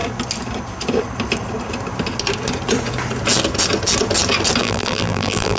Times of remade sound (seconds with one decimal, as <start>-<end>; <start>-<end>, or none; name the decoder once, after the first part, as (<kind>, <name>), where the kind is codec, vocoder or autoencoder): 4.6-5.6 (vocoder, BigVGAN v2)